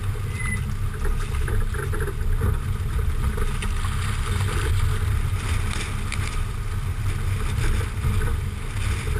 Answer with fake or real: real